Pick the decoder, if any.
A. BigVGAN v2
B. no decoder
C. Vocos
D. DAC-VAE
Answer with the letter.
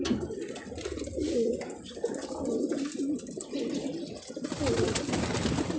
B